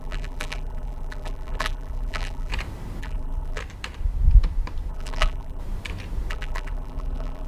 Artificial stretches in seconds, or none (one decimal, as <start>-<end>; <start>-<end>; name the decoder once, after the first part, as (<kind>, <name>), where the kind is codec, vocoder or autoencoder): 0.0-2.5 (vocoder, BigVGAN v2); 3.0-3.6; 4.9-5.6; 6.3-7.5